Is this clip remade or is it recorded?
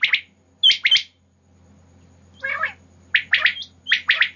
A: recorded